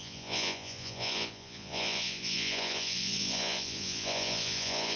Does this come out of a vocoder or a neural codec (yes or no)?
yes